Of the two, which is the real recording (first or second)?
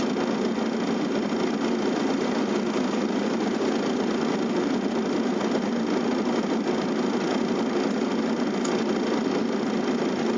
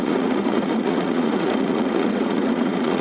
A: first